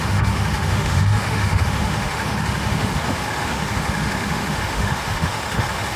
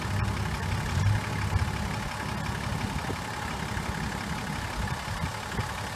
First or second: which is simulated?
first